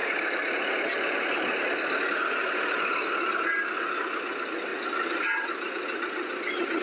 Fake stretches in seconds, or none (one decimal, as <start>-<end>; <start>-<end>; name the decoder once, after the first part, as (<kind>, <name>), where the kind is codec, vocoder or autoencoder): none